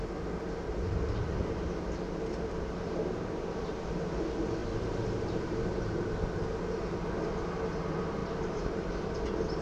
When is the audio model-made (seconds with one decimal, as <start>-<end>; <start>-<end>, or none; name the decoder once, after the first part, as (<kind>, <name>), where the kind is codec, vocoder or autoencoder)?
4.6-5.7 (vocoder, BigVGAN v2); 8.2-8.9